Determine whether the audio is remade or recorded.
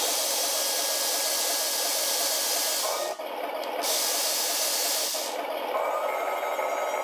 recorded